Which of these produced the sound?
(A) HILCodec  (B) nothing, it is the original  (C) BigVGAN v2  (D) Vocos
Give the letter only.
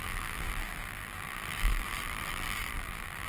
C